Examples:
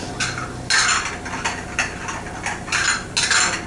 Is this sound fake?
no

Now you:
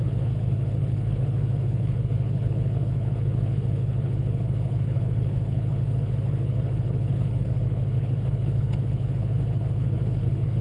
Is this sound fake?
yes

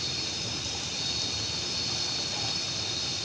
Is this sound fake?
no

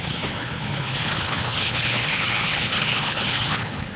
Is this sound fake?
yes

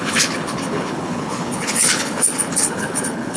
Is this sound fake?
yes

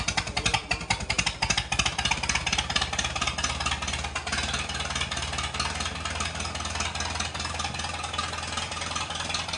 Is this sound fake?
no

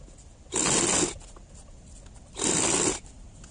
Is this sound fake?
no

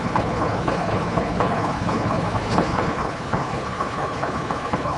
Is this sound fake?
yes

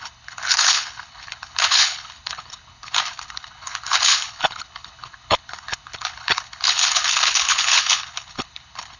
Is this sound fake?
yes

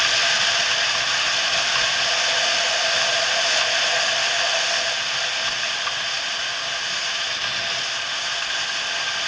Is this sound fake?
no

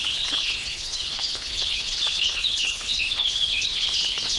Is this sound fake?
yes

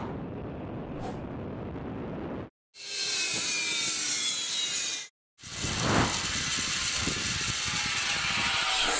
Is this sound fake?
no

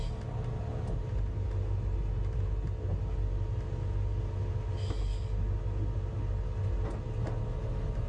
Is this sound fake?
no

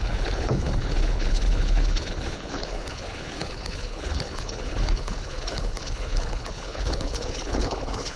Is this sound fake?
yes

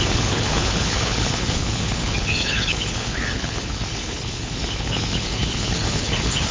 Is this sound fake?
yes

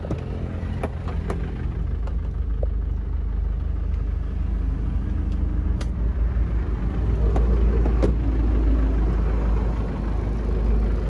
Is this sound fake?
no